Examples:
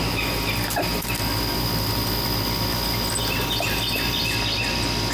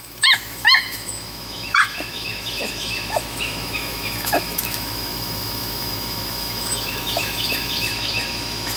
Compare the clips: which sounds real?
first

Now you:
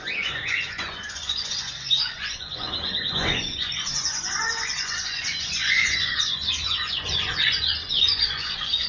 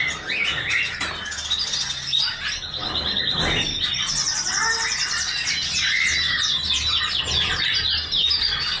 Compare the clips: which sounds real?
second